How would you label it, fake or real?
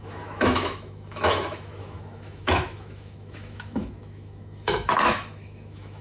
fake